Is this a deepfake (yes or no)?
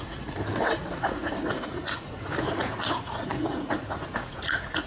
yes